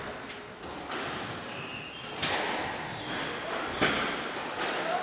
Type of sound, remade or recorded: recorded